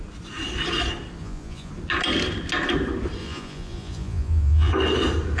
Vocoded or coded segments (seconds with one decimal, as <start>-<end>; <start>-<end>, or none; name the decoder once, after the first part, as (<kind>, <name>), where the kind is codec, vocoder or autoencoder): 1.2-1.7 (vocoder, Vocos); 3.2-4.7